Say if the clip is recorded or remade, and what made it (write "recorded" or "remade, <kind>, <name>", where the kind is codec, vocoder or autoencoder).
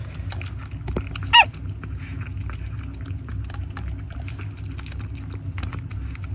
recorded